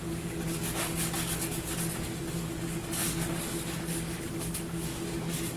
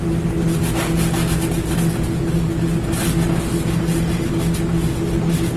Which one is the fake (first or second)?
first